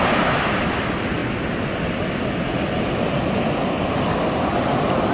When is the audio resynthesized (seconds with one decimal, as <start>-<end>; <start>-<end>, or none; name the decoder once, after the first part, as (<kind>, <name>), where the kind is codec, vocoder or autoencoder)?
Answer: 0.0-5.1 (vocoder, BigVGAN v2)

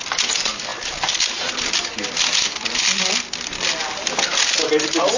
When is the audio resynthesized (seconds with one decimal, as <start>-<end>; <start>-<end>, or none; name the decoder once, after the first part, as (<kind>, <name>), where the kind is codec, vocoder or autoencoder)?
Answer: none

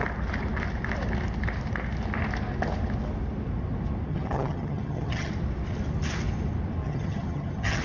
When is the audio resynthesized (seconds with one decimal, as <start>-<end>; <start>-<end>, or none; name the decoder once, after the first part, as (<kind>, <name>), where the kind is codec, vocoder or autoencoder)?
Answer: 4.1-5.3 (vocoder, HiFi-GAN); 6.8-7.8

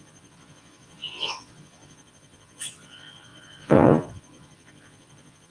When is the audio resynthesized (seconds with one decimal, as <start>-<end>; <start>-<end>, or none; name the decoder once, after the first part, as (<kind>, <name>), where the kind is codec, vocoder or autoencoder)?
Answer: 0.0-5.5 (vocoder, Vocos)